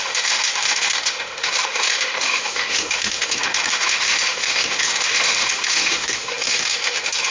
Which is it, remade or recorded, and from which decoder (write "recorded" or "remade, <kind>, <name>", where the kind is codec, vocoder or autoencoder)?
remade, autoencoder, DAC-VAE